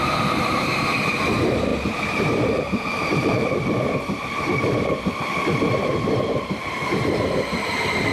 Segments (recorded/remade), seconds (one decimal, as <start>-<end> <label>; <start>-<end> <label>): 0.0-8.1 remade